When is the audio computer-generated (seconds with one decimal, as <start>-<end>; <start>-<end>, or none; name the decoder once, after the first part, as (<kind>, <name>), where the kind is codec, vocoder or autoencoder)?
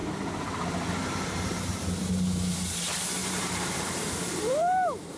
0.0-2.1 (vocoder, BigVGAN v2); 3.2-5.2